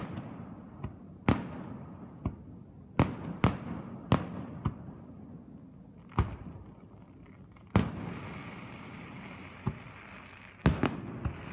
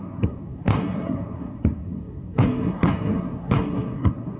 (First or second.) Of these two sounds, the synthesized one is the second